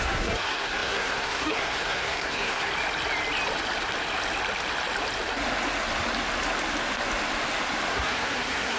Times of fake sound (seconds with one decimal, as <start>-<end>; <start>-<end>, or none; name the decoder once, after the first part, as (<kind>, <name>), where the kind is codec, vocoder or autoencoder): 0.0-2.7 (codec, SNAC); 7.9-8.8